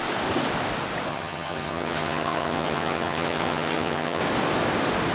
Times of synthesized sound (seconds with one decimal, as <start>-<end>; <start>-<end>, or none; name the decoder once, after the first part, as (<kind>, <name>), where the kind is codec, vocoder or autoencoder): 1.1-4.2 (vocoder, HiFi-GAN)